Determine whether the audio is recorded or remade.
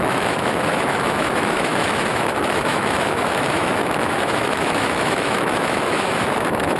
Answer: remade